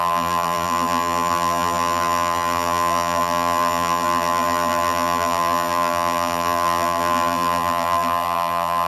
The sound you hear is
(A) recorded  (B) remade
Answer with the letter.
B